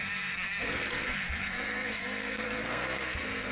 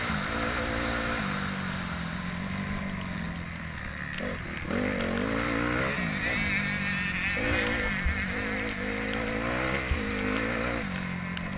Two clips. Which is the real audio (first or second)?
second